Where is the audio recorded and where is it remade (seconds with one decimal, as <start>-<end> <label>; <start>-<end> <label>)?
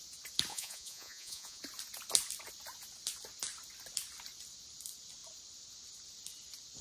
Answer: 0.0-0.5 recorded; 0.5-1.6 remade; 1.6-6.8 recorded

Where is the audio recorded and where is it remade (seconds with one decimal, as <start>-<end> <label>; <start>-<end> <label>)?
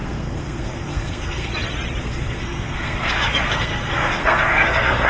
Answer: 0.0-1.5 remade; 1.5-2.0 recorded; 2.0-5.1 remade